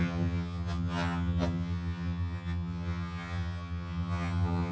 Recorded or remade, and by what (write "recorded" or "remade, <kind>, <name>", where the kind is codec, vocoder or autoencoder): remade, vocoder, HiFi-GAN